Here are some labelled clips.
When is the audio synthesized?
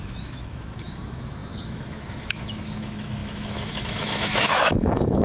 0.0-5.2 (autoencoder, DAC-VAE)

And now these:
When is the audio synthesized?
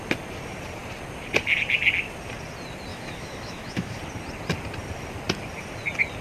2.9-4.0 (autoencoder, DAC-VAE)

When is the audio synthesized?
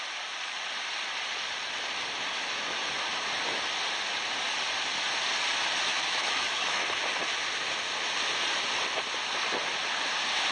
5.9-7.0 (autoencoder, DAC-VAE)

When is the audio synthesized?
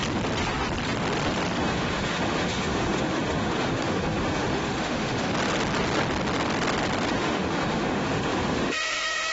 1.6-5.3 (autoencoder, DAC-VAE); 7.1-9.3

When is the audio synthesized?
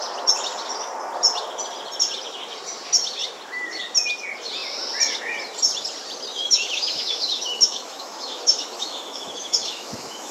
6.3-10.3 (autoencoder, DAC-VAE)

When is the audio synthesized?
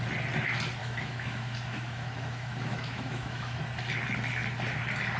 0.8-3.6 (autoencoder, DAC-VAE)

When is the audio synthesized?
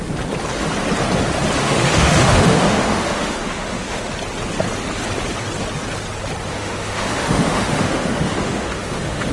1.6-4.1 (autoencoder, DAC-VAE); 6.5-9.3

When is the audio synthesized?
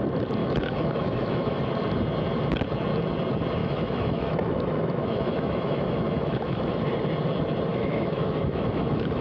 0.4-1.6 (autoencoder, DAC-VAE); 3.6-6.8; 7.7-9.2